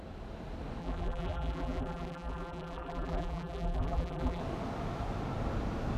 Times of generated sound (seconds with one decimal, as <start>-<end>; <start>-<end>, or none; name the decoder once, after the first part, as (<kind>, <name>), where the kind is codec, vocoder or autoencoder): 0.8-4.4 (vocoder, BigVGAN v2)